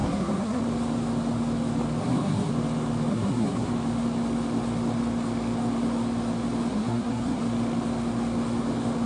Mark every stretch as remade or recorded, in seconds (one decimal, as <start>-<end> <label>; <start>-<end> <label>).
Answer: 0.0-0.6 remade; 0.6-2.0 recorded; 2.0-2.5 remade; 2.5-3.1 recorded; 3.1-3.7 remade; 3.7-6.7 recorded; 6.7-7.4 remade; 7.4-9.1 recorded